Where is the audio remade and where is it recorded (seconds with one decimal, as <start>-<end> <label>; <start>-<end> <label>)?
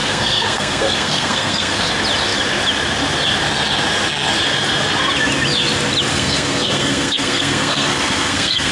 0.0-1.9 remade; 1.9-6.1 recorded; 6.1-8.7 remade